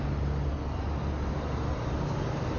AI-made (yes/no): no